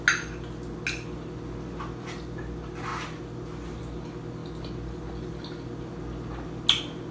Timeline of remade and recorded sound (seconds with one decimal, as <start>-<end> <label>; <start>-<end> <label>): 0.0-7.1 recorded